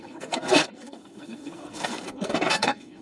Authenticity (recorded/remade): remade